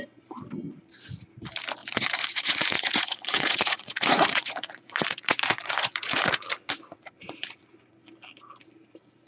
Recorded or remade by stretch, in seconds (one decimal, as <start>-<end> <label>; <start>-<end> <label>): 0.0-1.8 recorded; 1.8-6.5 remade; 6.5-9.3 recorded